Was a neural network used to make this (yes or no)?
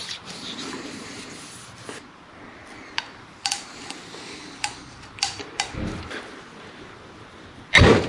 no